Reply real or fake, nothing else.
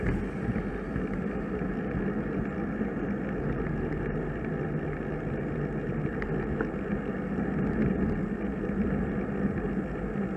real